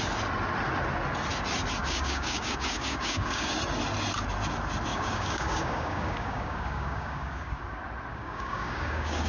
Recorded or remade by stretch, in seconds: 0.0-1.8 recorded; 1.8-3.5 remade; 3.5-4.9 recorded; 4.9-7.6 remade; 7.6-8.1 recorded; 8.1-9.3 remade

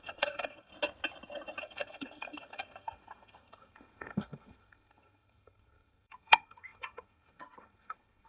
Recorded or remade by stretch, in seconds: 0.0-0.7 remade; 0.7-1.6 recorded; 1.6-8.3 remade

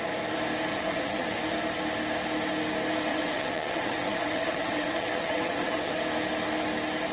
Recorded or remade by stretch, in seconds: 0.0-0.7 recorded; 0.7-1.3 remade; 1.3-3.1 recorded; 3.1-5.9 remade; 5.9-7.1 recorded